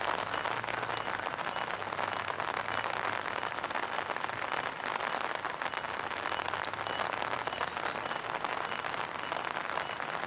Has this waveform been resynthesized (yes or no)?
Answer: no